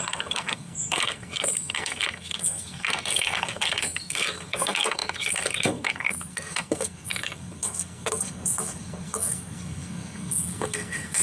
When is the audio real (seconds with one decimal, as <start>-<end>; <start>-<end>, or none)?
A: none